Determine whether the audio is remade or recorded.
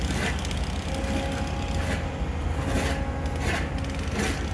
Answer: recorded